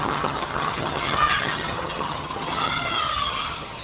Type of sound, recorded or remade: remade